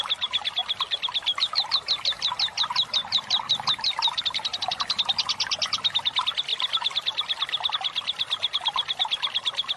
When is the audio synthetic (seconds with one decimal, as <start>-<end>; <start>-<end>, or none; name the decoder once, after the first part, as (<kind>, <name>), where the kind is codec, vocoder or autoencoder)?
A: none